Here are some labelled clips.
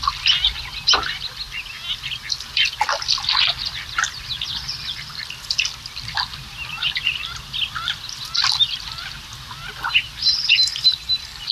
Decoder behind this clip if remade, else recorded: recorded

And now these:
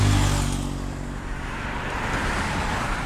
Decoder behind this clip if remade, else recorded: recorded